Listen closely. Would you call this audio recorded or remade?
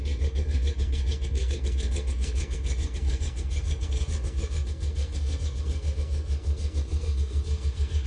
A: remade